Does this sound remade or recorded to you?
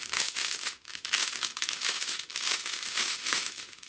remade